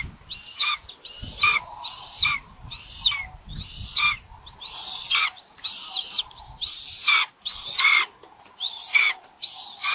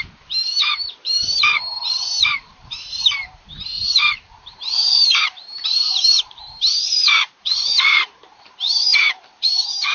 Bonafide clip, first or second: first